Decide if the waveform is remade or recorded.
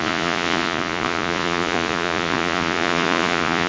remade